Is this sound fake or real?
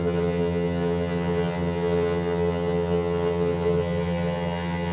fake